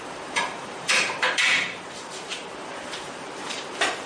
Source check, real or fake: fake